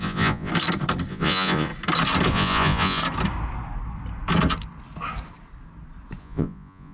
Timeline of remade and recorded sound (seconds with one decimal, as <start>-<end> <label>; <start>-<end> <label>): 0.0-0.5 remade; 0.5-1.1 recorded; 1.1-1.7 remade; 1.7-2.3 recorded; 2.3-3.0 remade; 3.0-6.2 recorded; 6.2-6.9 remade